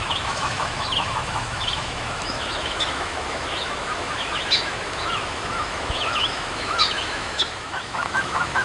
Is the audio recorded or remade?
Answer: remade